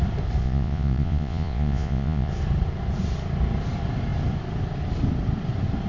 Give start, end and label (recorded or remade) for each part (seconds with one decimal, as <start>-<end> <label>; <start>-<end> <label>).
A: 0.0-0.4 recorded; 0.4-2.3 remade; 2.3-5.9 recorded